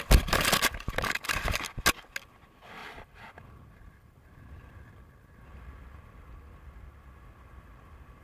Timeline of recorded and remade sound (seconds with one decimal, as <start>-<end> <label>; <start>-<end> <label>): 0.0-8.2 recorded